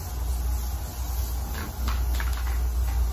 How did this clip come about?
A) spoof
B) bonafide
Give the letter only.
B